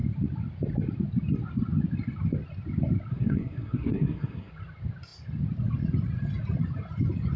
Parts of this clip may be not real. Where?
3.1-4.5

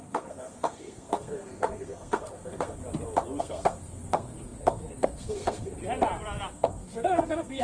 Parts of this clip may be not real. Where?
0.0-2.8; 3.4-5.8; 6.5-7.6

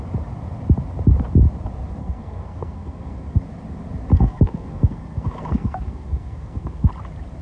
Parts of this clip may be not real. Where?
2.0-3.4; 4.1-6.9

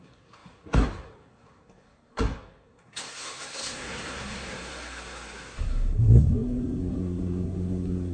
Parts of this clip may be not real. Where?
0.0-8.1

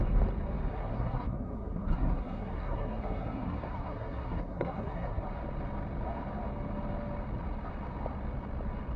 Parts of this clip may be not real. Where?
0.7-5.2

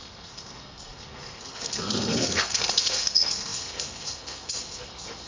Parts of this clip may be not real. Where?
0.0-5.3